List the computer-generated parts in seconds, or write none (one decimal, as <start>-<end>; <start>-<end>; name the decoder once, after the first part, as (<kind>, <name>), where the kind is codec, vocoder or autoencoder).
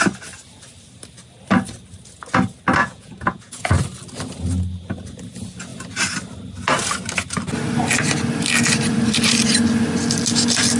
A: 2.8-3.7 (vocoder, Vocos)